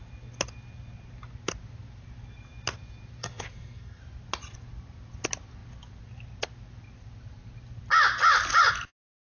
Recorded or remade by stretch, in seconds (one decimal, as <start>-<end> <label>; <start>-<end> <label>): 0.0-3.2 recorded; 3.2-4.0 remade; 4.0-9.3 recorded